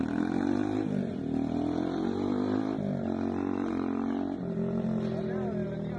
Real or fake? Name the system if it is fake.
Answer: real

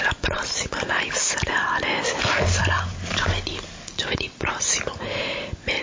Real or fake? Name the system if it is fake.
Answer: real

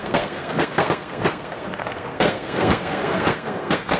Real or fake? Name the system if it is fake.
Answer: fake, codec, SNAC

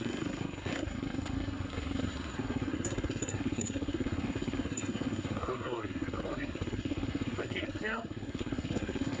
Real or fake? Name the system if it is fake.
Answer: fake, codec, SNAC